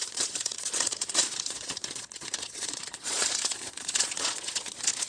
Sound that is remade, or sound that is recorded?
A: remade